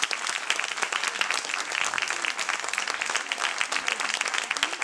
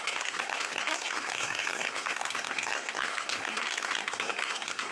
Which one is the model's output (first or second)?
second